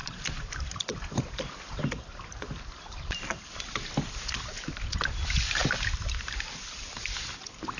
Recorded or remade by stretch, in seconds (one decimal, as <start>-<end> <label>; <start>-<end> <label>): 0.0-4.7 remade; 4.7-5.6 recorded; 5.6-6.5 remade; 6.5-7.8 recorded